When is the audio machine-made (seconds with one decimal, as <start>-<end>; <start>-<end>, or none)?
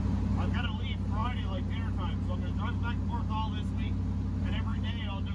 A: none